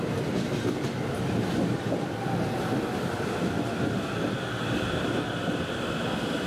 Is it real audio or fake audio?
real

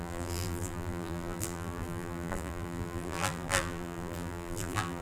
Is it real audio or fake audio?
fake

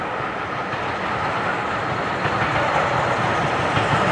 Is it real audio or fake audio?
real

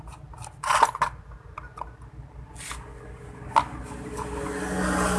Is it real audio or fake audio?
real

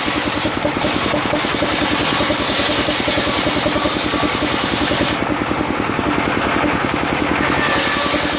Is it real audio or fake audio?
real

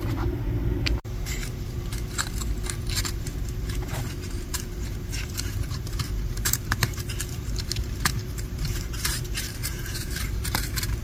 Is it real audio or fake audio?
fake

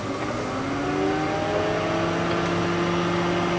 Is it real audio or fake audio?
real